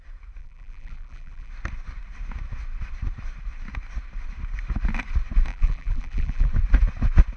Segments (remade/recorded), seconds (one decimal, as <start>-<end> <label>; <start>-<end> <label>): 0.0-0.4 recorded; 0.4-1.5 remade; 1.5-5.5 recorded; 5.5-6.5 remade; 6.5-7.4 recorded

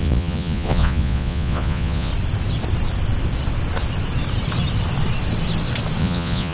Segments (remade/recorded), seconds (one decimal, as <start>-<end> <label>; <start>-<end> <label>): 0.0-2.1 remade; 2.1-6.0 recorded; 6.0-6.5 remade

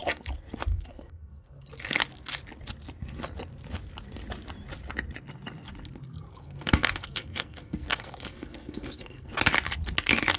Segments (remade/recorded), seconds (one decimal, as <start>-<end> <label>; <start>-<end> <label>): 0.0-0.7 recorded; 0.7-1.7 remade; 1.7-6.3 recorded; 6.3-9.3 remade; 9.3-10.4 recorded

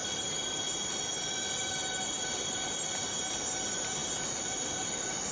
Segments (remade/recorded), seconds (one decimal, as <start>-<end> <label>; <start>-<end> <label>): 0.0-5.3 recorded

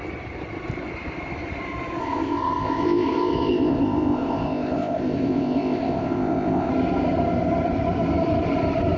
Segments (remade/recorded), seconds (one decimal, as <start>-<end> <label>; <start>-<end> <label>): 0.0-2.0 recorded; 2.0-6.7 remade; 6.7-9.0 recorded

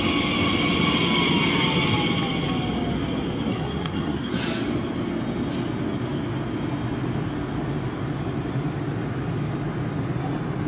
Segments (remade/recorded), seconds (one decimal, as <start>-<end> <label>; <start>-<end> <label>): 0.0-3.5 recorded; 3.5-4.3 remade; 4.3-10.7 recorded